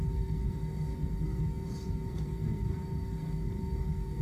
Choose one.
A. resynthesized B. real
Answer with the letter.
A